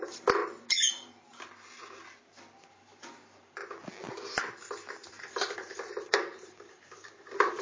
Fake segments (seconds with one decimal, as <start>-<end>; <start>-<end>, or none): 0.0-0.4; 2.7-3.6; 5.1-7.6